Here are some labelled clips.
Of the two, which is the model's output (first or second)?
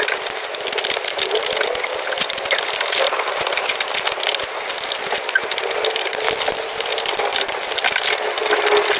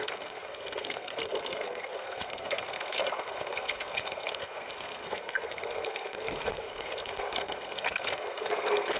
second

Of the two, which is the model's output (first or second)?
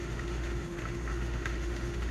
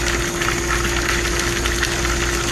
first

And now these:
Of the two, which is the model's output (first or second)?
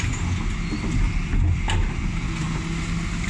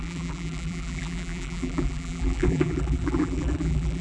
second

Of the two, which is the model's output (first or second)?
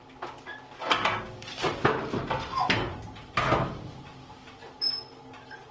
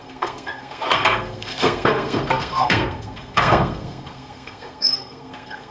second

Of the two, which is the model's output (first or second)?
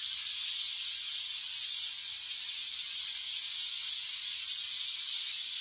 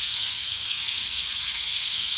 second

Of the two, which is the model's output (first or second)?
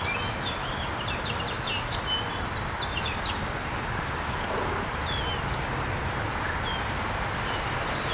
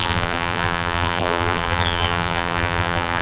second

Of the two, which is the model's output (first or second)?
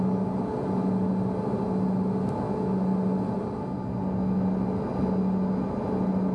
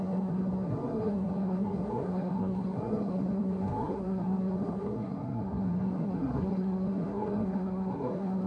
second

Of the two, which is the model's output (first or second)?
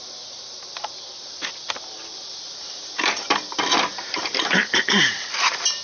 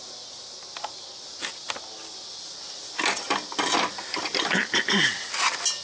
first